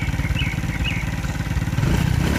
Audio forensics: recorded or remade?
remade